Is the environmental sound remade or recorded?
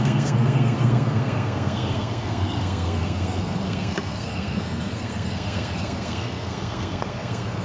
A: remade